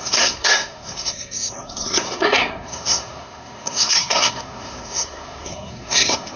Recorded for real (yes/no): no